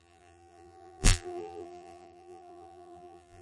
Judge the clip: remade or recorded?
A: remade